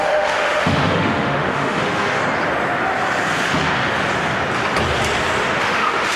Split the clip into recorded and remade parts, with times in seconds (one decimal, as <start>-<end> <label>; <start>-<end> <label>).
0.0-2.2 remade; 2.2-5.6 recorded; 5.6-6.2 remade